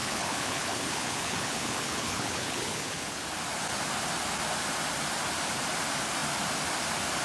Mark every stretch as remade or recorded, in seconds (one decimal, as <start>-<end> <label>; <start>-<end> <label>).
0.0-3.2 remade; 3.2-7.2 recorded